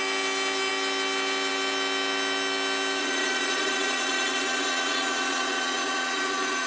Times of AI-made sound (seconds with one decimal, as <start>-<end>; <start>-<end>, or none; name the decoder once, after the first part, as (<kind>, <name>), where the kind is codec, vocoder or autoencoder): 3.0-6.7 (vocoder, Vocos)